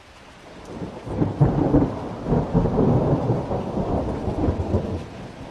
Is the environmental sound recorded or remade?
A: recorded